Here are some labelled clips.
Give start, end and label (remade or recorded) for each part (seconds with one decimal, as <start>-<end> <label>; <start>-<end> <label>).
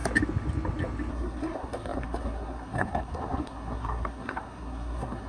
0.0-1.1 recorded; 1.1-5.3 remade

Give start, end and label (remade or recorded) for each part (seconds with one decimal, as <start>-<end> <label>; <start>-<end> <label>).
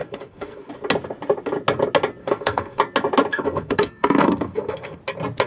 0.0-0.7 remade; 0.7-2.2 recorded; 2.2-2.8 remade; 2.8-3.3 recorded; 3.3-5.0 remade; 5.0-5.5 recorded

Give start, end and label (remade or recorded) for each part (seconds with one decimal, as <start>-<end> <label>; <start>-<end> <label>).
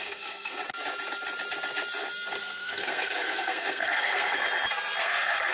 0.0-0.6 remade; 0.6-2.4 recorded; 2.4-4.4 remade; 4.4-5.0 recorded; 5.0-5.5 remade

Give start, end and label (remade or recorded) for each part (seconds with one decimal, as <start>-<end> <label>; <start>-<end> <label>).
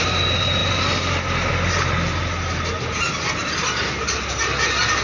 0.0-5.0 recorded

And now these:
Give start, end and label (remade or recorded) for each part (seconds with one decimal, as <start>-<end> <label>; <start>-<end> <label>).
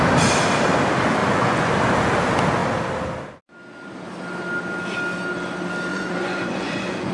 0.0-1.2 recorded; 1.2-1.7 remade; 1.7-5.9 recorded; 5.9-7.1 remade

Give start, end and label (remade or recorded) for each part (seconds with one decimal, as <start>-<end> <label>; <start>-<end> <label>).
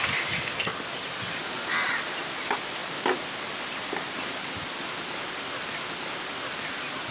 0.0-7.1 recorded